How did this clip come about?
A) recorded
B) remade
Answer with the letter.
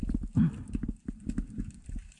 A